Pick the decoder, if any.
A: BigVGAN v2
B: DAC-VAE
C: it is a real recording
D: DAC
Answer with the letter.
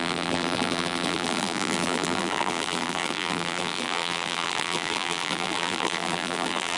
A